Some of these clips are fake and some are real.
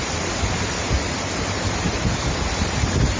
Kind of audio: real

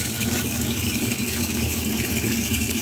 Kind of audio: fake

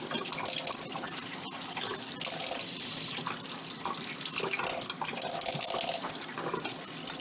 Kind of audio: real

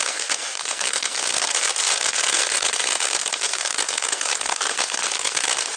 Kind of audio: fake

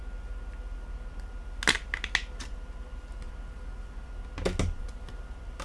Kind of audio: real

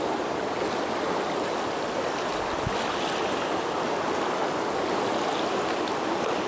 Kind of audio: real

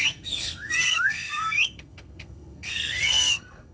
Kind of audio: fake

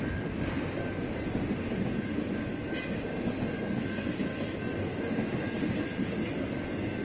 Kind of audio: real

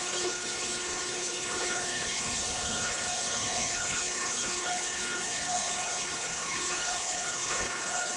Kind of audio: fake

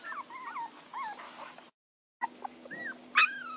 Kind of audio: real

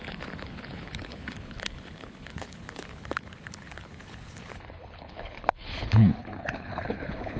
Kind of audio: fake